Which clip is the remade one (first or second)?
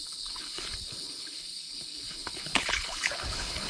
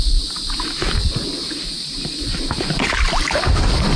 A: first